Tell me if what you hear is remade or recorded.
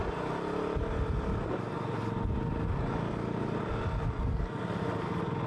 recorded